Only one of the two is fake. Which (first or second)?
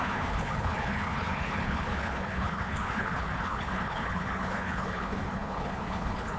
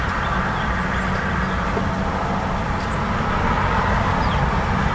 first